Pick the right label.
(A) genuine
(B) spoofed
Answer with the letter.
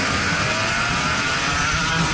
A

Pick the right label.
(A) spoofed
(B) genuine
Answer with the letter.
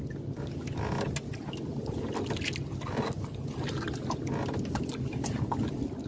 B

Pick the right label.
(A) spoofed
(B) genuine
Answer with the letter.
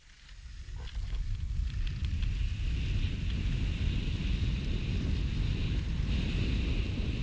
B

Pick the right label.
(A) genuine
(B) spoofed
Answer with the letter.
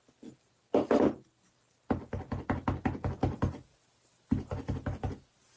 A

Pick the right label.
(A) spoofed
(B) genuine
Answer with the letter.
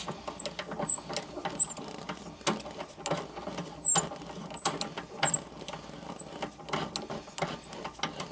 B